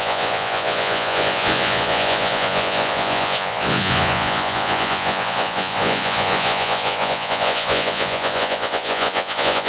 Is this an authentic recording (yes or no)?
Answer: no